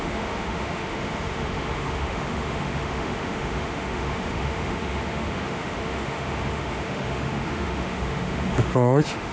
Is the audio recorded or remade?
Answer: remade